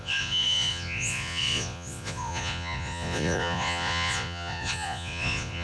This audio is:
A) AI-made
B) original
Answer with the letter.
A